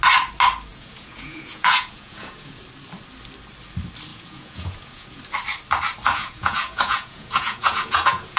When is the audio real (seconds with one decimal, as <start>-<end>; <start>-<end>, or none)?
0.0-0.7; 2.6-4.1; 5.2-6.1